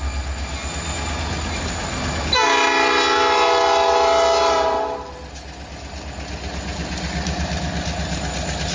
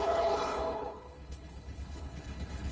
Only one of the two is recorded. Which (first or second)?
first